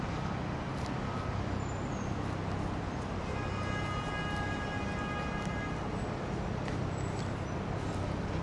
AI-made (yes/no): no